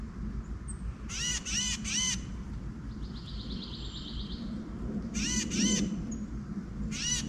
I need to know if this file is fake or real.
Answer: real